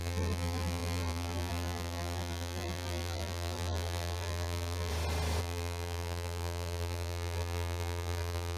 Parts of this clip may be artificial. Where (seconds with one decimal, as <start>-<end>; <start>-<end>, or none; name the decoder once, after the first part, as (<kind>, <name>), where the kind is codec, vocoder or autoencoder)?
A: 0.0-4.9 (vocoder, BigVGAN v2); 5.4-8.6